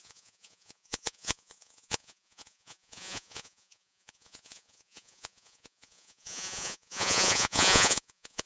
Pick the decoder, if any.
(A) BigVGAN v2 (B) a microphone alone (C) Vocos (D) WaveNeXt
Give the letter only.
C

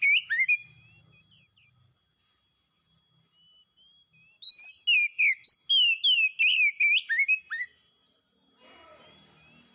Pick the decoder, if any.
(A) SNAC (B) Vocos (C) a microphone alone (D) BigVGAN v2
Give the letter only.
C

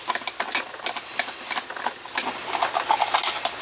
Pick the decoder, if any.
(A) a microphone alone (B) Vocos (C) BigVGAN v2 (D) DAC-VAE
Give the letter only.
A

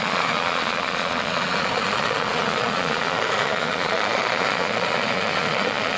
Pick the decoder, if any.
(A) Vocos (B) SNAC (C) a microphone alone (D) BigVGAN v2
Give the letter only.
A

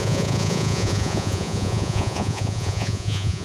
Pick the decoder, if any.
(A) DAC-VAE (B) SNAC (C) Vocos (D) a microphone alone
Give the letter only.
C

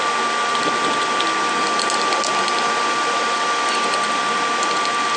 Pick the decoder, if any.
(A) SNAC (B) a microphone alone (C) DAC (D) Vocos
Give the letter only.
B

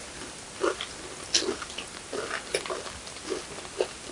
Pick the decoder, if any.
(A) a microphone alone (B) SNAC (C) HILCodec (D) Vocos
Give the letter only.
A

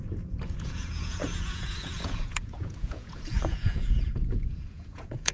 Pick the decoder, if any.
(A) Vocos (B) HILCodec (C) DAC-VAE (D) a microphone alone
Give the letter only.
A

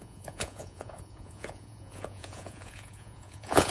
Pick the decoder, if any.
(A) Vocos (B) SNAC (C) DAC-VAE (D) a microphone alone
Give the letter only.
A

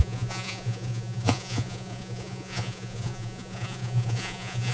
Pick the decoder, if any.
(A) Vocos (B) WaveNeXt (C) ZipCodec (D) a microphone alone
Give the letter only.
A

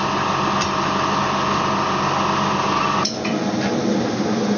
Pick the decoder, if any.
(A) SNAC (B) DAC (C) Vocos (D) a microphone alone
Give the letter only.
D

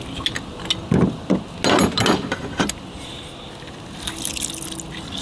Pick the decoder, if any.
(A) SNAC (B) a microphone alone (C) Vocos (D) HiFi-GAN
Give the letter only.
B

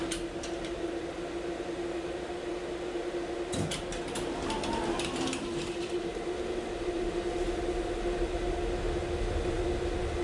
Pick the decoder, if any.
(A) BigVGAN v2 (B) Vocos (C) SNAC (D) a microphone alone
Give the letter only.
D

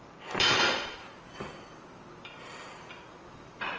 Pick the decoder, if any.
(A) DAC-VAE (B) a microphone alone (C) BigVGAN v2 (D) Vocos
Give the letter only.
B